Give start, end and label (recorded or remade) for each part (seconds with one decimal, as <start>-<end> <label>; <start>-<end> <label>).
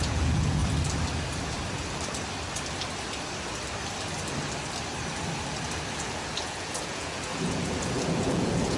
0.0-0.6 remade; 0.6-5.9 recorded; 5.9-8.8 remade